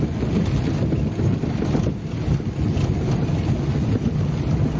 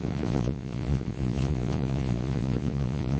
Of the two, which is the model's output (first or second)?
second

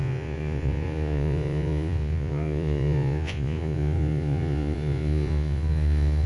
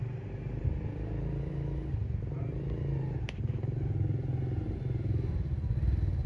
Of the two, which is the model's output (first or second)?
first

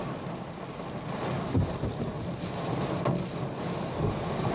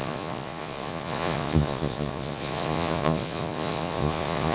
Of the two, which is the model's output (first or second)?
second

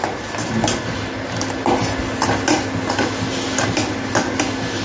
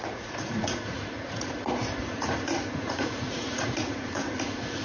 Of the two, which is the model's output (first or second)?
second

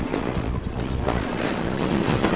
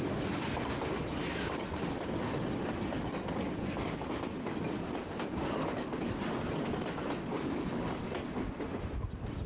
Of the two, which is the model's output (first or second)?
first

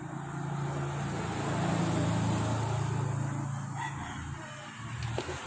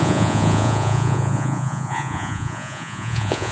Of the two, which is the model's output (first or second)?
second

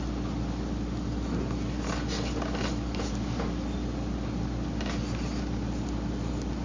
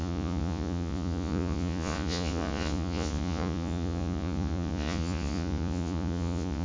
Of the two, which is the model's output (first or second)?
second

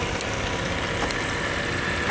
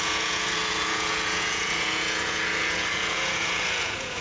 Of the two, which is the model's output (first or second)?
second